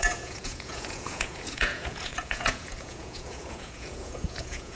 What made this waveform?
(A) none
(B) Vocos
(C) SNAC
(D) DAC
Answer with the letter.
B